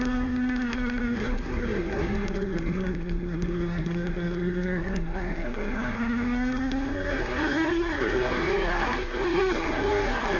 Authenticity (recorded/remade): remade